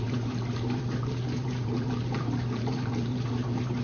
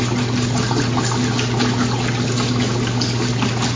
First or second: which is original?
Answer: second